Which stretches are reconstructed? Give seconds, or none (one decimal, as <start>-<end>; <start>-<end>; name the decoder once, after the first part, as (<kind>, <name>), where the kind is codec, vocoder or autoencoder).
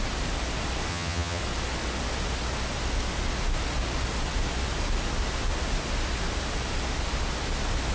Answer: 0.9-1.4 (vocoder, HiFi-GAN)